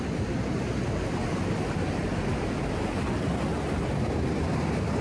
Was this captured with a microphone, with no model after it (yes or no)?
yes